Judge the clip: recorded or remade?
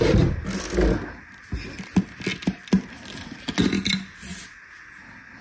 recorded